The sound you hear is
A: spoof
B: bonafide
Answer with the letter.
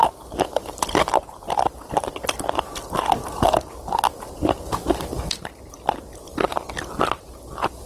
B